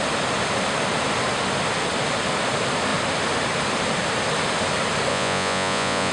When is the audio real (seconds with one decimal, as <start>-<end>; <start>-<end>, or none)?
0.0-5.1